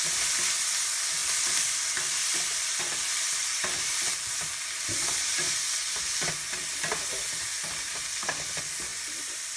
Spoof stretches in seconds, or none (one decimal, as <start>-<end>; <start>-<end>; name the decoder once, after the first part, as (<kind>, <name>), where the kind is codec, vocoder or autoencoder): 1.2-4.3 (vocoder, BigVGAN v2); 8.9-9.6